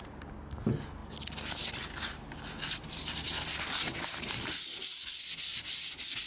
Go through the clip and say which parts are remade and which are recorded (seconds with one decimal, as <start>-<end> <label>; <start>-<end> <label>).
0.0-6.3 recorded